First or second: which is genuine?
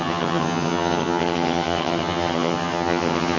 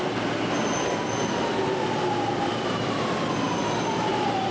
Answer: second